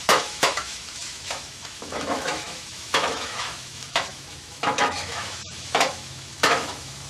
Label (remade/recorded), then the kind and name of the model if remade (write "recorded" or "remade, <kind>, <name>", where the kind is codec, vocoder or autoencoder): remade, autoencoder, DAC-VAE